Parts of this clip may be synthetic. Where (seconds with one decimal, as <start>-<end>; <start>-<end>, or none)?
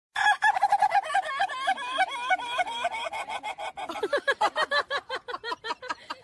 none